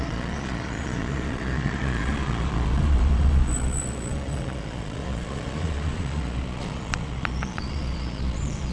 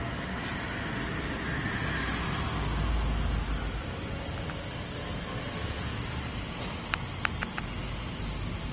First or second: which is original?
second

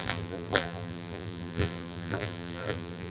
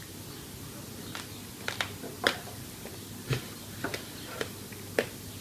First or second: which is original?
second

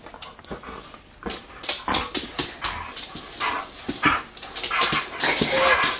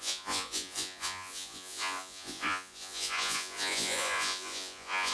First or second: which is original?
first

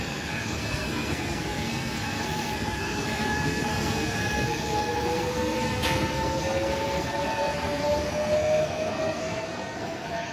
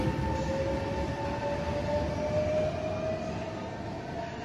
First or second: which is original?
second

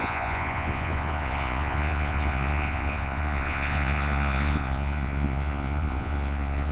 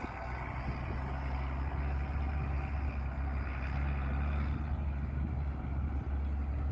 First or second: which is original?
second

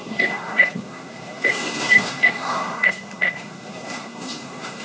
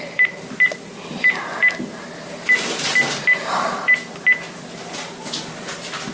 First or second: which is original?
second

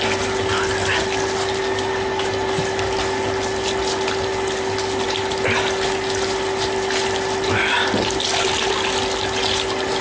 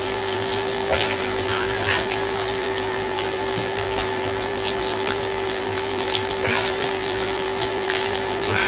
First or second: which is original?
first